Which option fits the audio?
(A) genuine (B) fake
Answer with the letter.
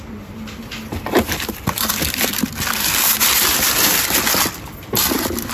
A